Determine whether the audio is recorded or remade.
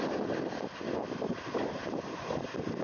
recorded